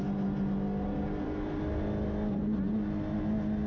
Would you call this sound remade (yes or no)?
no